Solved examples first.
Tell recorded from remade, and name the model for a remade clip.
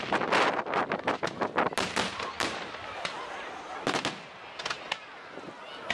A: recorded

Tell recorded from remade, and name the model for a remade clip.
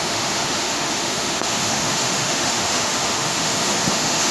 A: remade, autoencoder, DAC-VAE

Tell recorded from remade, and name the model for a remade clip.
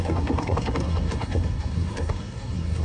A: remade, codec, SNAC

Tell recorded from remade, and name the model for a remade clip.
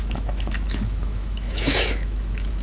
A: remade, autoencoder, DAC-VAE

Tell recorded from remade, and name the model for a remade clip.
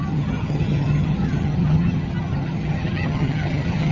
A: remade, vocoder, HiFi-GAN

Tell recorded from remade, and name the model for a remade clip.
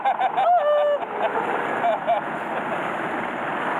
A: recorded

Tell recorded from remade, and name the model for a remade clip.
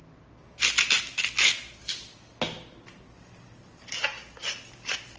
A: recorded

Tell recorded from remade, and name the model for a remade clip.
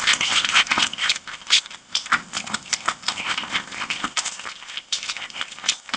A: remade, codec, ZipCodec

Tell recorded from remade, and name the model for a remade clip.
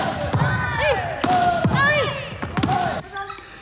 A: recorded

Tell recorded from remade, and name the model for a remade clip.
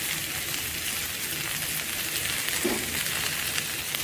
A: recorded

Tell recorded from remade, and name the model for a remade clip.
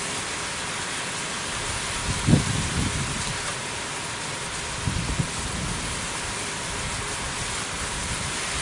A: recorded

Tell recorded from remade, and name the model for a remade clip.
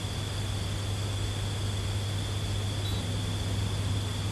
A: recorded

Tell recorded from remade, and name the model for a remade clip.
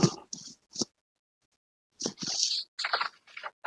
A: recorded